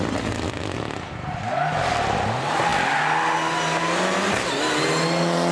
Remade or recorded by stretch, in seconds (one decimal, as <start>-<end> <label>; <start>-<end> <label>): 0.0-5.5 recorded